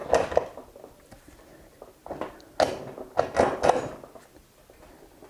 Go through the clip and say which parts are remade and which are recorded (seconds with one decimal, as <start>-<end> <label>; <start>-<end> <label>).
0.0-5.3 recorded